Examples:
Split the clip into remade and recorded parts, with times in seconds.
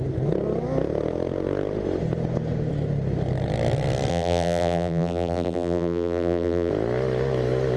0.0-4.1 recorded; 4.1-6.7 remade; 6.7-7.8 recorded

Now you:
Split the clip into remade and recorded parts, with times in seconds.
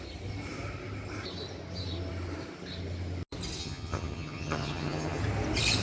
0.0-3.6 recorded; 3.6-5.2 remade; 5.2-5.8 recorded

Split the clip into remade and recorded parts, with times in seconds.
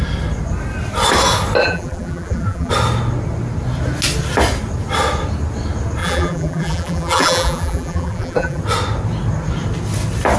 0.0-1.6 recorded; 1.6-2.7 remade; 2.7-6.0 recorded; 6.0-8.6 remade; 8.6-10.4 recorded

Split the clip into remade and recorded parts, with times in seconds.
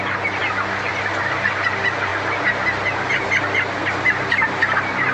0.0-5.1 recorded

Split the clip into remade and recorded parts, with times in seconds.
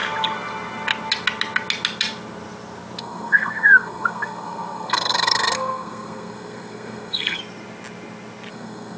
0.0-3.0 recorded; 3.0-7.4 remade; 7.4-8.5 recorded; 8.5-9.0 remade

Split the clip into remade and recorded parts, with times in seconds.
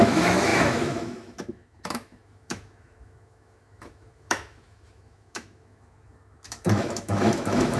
0.0-7.8 remade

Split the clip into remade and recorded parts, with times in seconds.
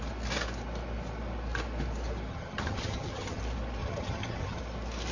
0.0-2.3 recorded; 2.3-3.4 remade; 3.4-3.8 recorded; 3.8-4.6 remade; 4.6-5.1 recorded